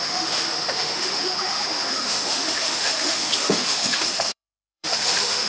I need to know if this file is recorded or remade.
remade